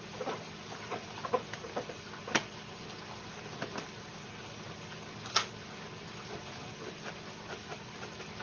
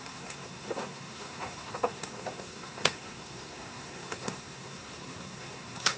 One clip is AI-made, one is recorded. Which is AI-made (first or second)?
second